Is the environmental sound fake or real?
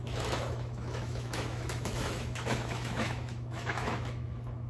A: fake